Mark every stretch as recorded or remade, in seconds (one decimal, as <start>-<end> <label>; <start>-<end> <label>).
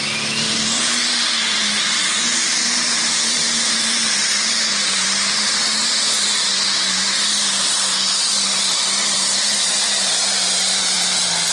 0.0-11.5 remade